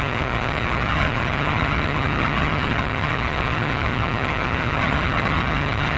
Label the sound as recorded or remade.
remade